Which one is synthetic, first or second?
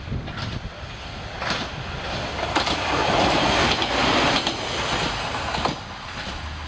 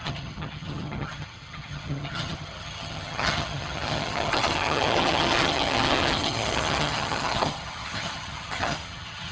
second